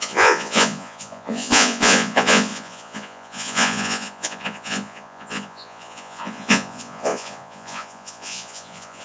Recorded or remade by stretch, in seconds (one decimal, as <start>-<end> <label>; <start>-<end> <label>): 0.0-9.0 remade